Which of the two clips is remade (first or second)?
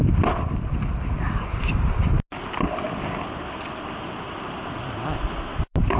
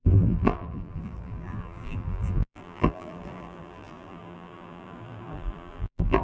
second